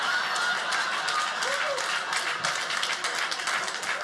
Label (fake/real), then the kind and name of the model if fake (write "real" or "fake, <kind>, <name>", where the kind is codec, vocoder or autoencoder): real